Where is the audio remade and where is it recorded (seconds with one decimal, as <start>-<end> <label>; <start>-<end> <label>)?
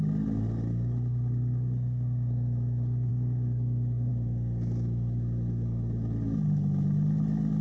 0.0-7.6 recorded